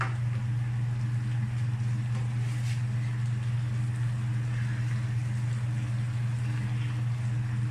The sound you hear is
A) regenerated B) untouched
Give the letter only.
B